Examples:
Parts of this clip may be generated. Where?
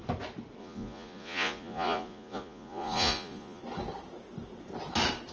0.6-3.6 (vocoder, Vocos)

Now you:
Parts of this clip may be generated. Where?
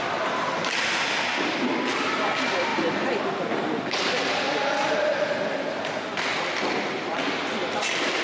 none